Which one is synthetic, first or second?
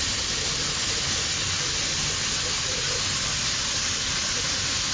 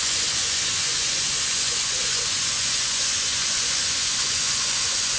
second